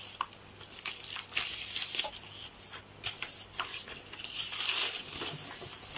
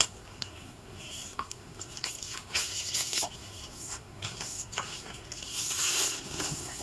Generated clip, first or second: second